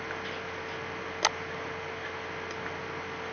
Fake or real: real